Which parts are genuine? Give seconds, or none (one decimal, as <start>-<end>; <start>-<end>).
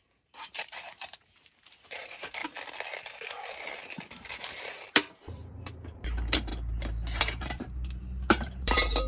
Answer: 2.4-4.4; 6.5-7.2